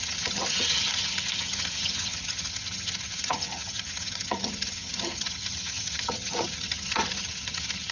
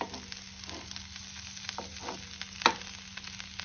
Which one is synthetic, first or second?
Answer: first